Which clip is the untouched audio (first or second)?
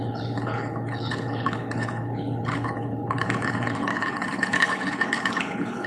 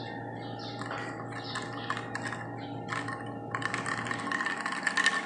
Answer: second